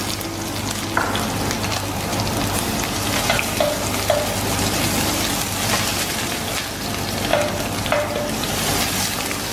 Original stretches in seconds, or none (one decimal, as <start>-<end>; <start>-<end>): 0.0-5.9; 6.4-9.5